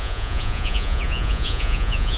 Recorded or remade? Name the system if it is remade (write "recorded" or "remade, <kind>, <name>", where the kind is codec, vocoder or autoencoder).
remade, vocoder, Vocos